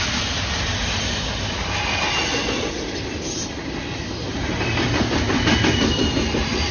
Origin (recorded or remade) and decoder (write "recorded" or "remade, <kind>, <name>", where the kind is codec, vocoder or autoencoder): recorded